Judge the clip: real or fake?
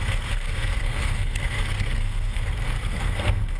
fake